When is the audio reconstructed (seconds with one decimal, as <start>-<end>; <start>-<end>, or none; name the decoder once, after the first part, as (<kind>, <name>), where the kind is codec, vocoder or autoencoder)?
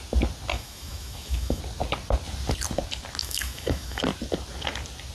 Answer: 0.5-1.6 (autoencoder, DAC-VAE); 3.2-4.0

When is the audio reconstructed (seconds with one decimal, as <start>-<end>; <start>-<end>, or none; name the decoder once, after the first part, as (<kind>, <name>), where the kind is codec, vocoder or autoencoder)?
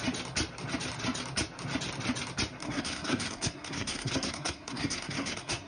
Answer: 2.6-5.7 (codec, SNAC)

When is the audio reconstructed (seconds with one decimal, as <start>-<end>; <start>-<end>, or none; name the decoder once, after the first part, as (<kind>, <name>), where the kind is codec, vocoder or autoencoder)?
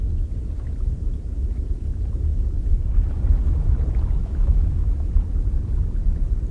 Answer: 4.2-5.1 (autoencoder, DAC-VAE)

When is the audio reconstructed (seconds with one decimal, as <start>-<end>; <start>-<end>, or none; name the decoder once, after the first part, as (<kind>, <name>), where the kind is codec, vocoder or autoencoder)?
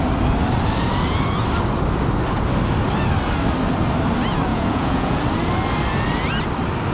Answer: 4.5-5.2 (vocoder, Vocos)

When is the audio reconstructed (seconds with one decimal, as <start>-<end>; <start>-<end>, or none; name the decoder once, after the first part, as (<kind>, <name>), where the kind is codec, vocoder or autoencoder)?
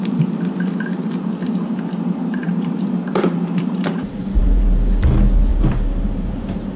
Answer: 2.4-4.6 (vocoder, BigVGAN v2); 5.5-6.8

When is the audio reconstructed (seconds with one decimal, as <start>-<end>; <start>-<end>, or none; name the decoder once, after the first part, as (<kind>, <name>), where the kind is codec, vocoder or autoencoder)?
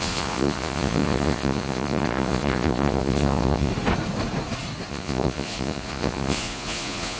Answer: 0.0-3.7 (vocoder, Vocos); 4.9-7.2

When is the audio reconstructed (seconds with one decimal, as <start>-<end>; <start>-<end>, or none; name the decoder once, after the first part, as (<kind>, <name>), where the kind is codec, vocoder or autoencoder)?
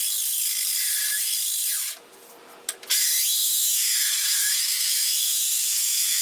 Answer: 3.2-6.2 (autoencoder, DAC-VAE)